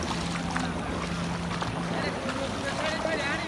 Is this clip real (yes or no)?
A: yes